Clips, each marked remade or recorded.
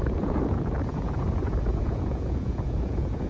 remade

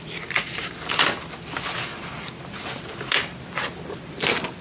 recorded